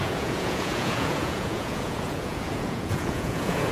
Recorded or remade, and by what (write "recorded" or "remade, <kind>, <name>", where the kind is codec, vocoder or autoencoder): remade, vocoder, Vocos